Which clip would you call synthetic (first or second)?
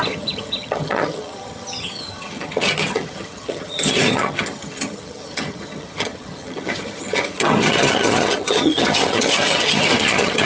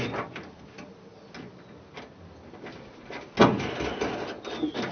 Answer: first